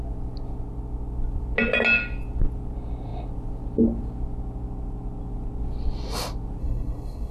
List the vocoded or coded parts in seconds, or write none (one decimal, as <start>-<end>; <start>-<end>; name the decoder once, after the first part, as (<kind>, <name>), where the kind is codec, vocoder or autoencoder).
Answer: 6.6-7.3 (codec, SNAC)

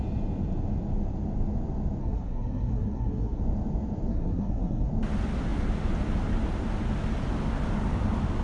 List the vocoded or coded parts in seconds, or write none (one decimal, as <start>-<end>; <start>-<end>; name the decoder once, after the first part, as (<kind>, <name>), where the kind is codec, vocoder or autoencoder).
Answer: 2.0-3.4 (codec, SNAC); 4.1-4.9

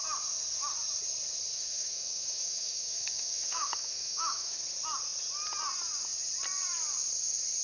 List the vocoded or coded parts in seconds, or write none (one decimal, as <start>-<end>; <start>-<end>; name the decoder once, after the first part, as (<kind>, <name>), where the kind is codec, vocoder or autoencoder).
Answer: 1.5-4.5 (autoencoder, DAC-VAE)